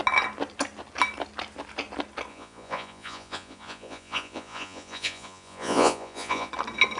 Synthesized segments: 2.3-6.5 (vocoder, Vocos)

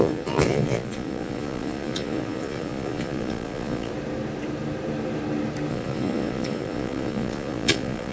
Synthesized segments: 0.0-3.9 (vocoder, Vocos); 5.7-8.1

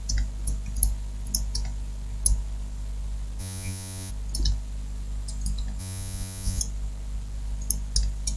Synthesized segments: 3.4-4.1 (vocoder, Vocos); 5.8-6.6

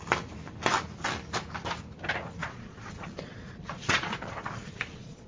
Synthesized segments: 2.4-5.3 (vocoder, Vocos)

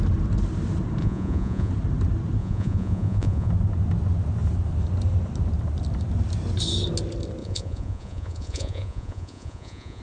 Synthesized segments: 1.0-1.7 (vocoder, Vocos); 2.4-3.5; 7.4-10.0

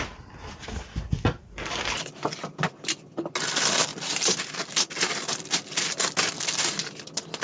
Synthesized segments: none

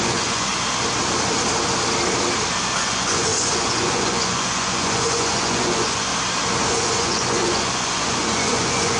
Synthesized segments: 0.0-0.5 (vocoder, Vocos); 2.8-6.1; 6.7-9.0